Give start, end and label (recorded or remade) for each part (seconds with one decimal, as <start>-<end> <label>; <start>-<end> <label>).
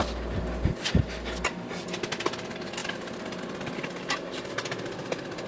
0.0-5.5 recorded